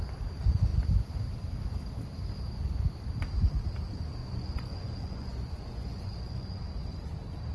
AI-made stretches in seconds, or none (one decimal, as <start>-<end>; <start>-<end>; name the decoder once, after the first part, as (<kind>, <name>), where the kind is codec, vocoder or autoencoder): 4.2-6.6 (vocoder, Vocos)